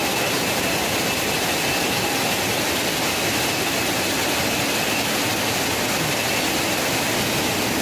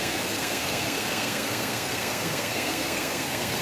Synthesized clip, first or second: second